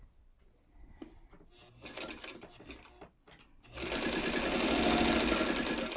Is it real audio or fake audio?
real